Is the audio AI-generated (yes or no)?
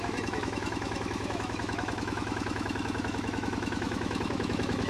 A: yes